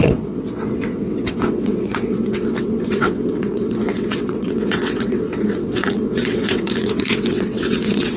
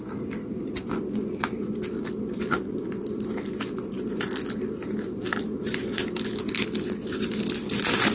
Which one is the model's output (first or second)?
first